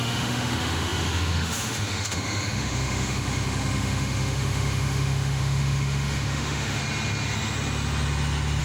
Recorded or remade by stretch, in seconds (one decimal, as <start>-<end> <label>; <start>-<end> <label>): 0.0-6.8 remade; 6.8-8.6 recorded